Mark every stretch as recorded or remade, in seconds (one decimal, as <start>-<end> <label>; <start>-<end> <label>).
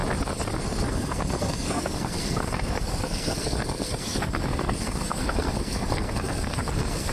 0.0-0.6 recorded; 0.6-7.1 remade